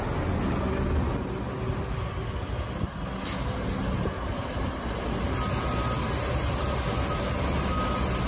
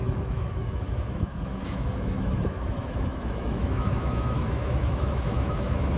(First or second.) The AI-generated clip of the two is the second